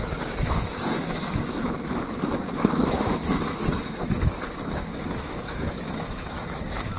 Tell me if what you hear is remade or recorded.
remade